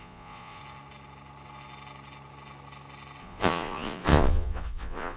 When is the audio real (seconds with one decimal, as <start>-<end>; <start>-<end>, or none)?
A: 0.6-3.2